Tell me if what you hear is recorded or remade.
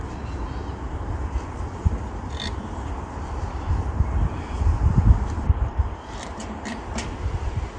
remade